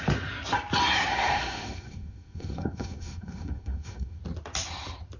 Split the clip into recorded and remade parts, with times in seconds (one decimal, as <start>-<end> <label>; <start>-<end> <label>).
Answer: 0.0-1.1 recorded; 1.1-4.2 remade; 4.2-5.2 recorded